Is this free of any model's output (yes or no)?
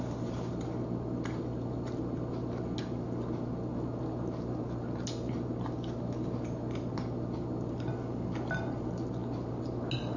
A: yes